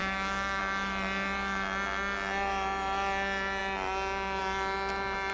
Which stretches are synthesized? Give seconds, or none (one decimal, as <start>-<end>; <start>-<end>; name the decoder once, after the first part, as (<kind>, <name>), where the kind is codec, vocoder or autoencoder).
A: 0.0-0.6 (codec, DAC)